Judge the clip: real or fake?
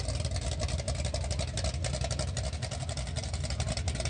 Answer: real